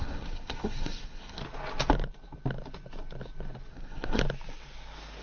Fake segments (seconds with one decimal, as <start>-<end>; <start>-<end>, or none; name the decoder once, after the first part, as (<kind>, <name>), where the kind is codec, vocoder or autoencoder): 0.0-1.4 (codec, SNAC); 3.7-4.2

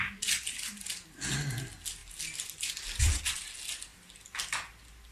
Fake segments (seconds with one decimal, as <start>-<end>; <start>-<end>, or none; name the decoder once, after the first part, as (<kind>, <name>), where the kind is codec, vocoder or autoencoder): none